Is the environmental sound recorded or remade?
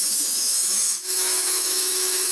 remade